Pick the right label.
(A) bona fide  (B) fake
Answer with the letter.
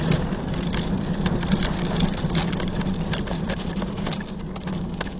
A